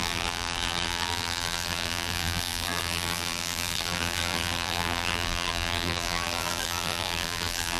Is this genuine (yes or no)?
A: no